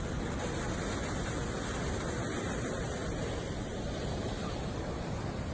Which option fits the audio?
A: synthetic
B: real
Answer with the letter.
B